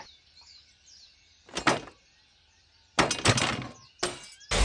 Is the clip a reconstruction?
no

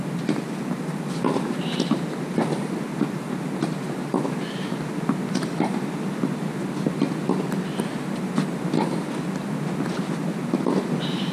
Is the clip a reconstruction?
no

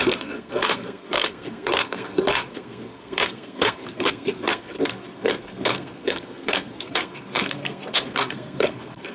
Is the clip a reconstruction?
yes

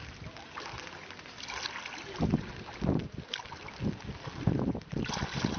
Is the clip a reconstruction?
no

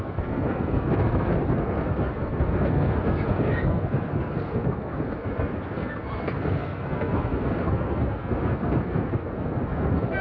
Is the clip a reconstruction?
yes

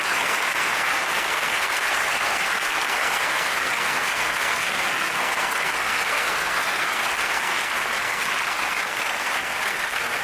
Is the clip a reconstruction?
yes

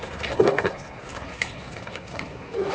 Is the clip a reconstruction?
yes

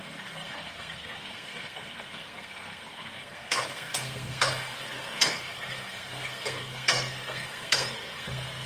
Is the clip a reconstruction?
yes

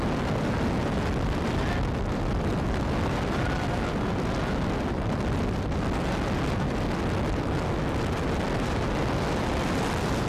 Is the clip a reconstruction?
no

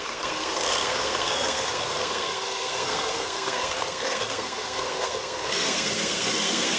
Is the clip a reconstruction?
yes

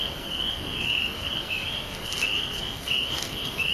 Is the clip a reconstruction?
yes